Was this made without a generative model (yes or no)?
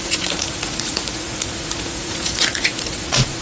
no